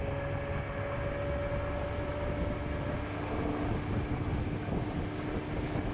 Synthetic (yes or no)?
no